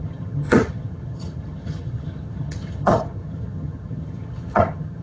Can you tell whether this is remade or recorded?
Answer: remade